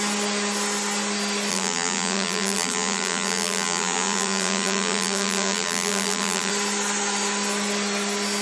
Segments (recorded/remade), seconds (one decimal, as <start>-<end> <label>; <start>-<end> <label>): 0.0-1.5 recorded; 1.5-6.5 remade; 6.5-8.4 recorded